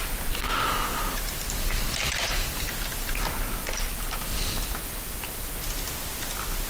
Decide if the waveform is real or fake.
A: real